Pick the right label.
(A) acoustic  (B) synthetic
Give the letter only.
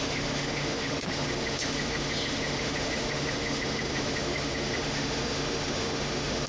B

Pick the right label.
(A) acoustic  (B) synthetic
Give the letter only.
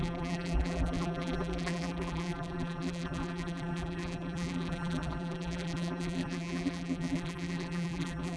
B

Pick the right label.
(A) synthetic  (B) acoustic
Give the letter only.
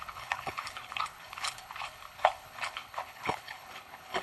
A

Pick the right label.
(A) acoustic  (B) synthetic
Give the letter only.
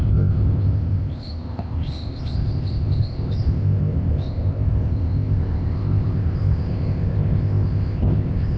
B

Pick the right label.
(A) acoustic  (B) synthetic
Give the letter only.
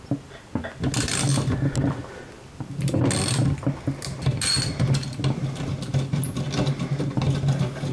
A